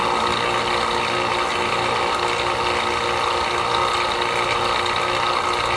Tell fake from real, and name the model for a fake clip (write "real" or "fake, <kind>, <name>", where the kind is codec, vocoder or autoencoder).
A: real